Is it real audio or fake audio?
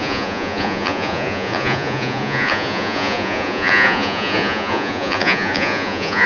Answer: fake